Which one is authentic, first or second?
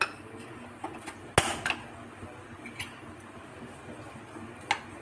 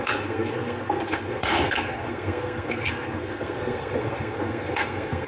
first